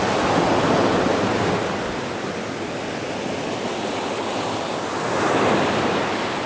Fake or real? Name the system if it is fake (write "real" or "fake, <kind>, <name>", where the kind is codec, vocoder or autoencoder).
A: real